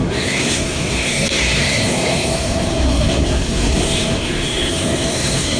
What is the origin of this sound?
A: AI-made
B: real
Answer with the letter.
A